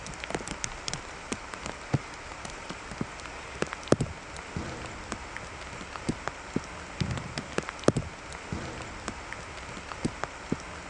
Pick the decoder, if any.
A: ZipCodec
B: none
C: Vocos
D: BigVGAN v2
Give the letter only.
B